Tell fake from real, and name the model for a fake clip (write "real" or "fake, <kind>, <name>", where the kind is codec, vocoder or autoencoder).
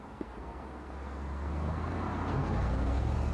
fake, codec, SNAC